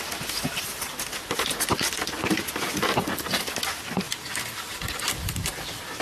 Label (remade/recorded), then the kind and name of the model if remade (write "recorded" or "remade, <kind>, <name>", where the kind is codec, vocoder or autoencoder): recorded